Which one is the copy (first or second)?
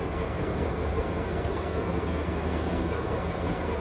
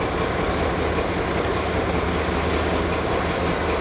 first